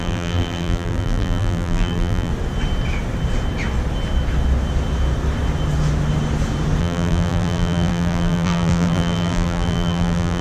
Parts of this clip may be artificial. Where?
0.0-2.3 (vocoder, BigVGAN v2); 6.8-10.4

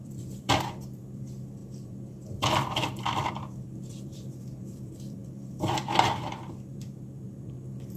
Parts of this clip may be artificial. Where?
0.0-8.0 (vocoder, BigVGAN v2)

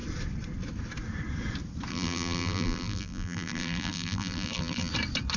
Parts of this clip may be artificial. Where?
1.9-4.9 (vocoder, BigVGAN v2)

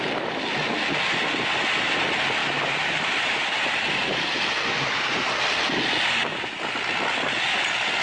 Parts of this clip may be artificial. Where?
2.4-5.4 (vocoder, BigVGAN v2)

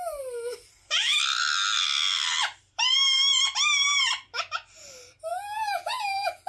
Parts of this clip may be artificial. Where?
3.3-4.0 (vocoder, BigVGAN v2); 5.3-6.5

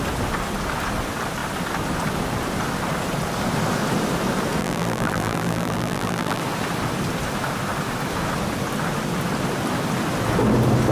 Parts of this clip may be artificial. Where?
4.6-6.4 (vocoder, BigVGAN v2)